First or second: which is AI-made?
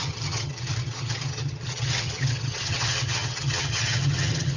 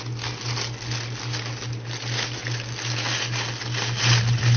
first